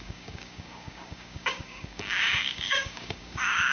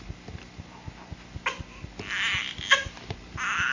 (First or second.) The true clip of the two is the second